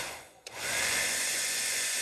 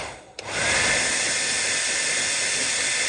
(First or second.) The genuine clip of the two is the second